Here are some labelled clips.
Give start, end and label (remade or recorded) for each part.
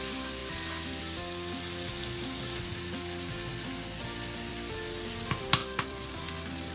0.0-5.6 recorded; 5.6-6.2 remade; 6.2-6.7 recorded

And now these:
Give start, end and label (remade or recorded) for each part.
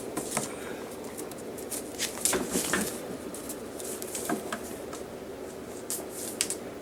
0.0-6.8 recorded